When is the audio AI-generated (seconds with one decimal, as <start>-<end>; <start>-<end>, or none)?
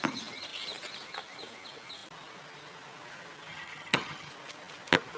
3.5-4.3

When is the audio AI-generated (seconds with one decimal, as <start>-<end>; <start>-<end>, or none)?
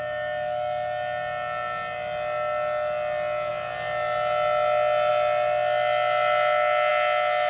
none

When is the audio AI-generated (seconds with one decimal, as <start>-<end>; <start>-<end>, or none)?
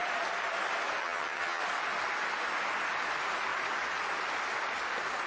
1.0-1.6